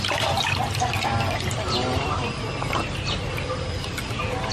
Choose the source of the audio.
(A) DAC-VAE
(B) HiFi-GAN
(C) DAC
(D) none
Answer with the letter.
D